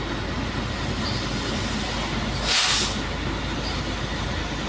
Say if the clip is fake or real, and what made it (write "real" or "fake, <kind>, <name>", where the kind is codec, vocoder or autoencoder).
real